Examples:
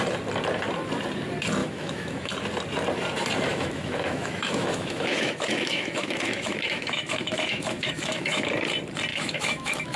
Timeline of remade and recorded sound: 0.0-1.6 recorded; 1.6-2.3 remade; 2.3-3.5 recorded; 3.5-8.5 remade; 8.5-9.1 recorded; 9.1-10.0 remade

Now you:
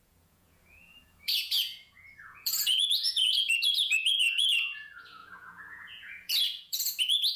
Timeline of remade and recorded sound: 0.0-7.4 remade

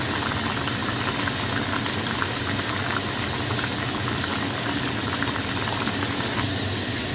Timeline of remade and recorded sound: 0.0-7.1 recorded